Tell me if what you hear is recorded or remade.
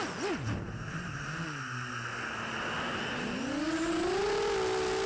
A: recorded